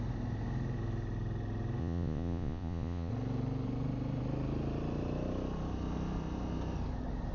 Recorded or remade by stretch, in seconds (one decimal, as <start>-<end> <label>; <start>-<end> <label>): 0.0-1.8 recorded; 1.8-3.1 remade; 3.1-7.3 recorded